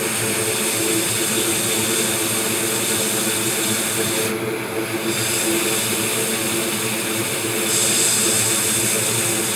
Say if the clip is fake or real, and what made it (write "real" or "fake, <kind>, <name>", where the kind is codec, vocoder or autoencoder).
real